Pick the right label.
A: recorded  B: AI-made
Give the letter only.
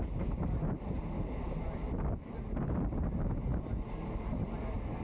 A